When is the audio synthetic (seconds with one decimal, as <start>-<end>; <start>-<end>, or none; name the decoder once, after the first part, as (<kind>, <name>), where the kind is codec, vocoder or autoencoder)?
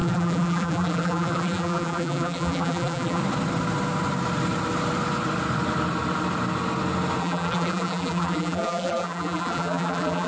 0.0-3.2 (vocoder, BigVGAN v2); 7.2-10.3